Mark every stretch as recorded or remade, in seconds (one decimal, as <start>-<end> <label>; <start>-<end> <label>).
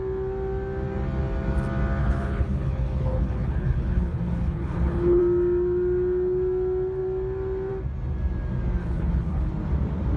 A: 0.0-2.0 recorded; 2.0-5.2 remade; 5.2-8.8 recorded; 8.8-9.5 remade; 9.5-10.2 recorded